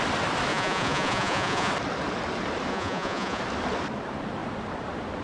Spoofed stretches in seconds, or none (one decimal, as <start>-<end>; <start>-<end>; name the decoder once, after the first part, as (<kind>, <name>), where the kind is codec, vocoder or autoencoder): 0.5-1.7 (vocoder, Vocos); 2.7-3.4